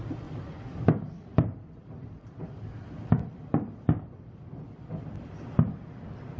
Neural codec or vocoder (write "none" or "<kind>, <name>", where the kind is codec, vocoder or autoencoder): none